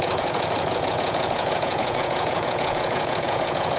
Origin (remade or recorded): remade